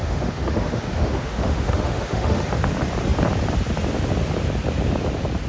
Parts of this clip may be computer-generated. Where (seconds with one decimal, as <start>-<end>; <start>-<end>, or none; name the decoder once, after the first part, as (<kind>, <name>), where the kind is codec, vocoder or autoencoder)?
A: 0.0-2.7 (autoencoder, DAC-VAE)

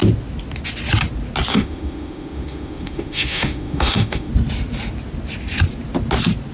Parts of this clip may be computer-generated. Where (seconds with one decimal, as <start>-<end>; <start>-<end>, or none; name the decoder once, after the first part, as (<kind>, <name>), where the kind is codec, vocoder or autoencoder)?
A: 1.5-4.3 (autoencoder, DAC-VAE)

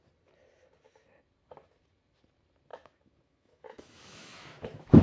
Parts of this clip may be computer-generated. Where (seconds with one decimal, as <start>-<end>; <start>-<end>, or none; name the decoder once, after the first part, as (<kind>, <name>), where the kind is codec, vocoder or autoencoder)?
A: 2.7-5.0 (autoencoder, DAC-VAE)

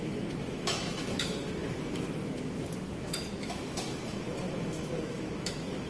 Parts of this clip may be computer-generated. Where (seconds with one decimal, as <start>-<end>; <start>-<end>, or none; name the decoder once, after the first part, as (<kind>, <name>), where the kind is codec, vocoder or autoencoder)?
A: 0.0-5.9 (autoencoder, DAC-VAE)